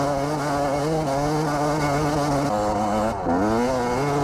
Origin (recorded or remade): recorded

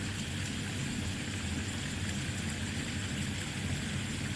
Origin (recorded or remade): recorded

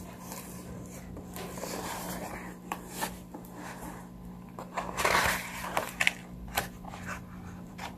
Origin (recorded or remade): remade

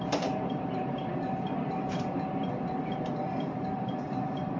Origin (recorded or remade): remade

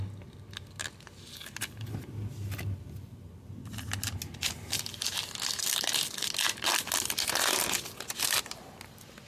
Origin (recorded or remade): recorded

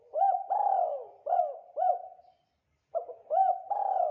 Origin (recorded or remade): recorded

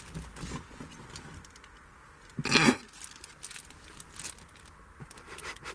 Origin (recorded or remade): recorded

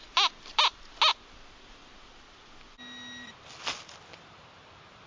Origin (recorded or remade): recorded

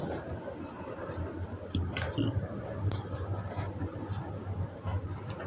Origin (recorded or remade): recorded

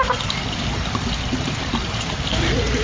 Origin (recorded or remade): remade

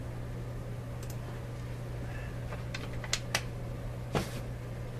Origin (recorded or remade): recorded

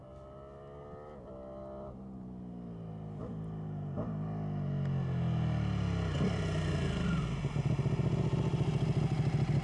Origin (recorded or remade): recorded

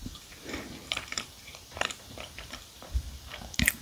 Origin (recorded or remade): remade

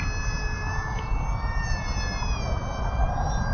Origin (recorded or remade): recorded